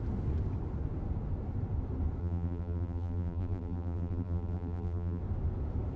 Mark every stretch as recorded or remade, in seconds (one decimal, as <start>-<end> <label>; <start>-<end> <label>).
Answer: 0.0-2.2 recorded; 2.2-5.2 remade; 5.2-6.0 recorded